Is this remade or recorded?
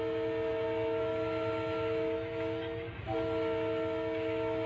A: recorded